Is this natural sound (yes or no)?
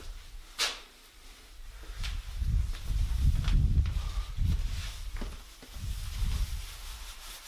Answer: yes